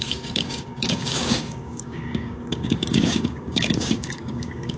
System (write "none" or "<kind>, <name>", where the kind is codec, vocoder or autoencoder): codec, DAC